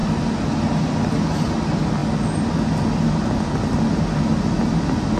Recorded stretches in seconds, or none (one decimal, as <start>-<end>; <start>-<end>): 0.0-5.2